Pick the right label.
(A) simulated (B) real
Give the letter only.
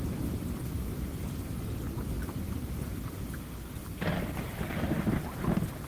B